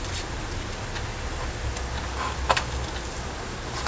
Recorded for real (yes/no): yes